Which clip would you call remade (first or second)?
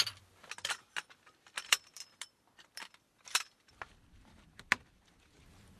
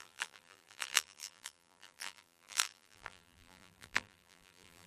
second